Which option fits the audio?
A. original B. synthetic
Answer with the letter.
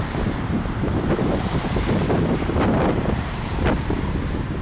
B